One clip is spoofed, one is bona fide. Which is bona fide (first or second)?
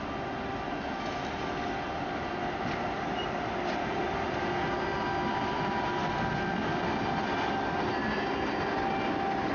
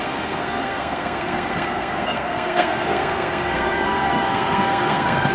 first